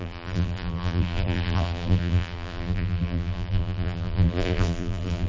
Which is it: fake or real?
fake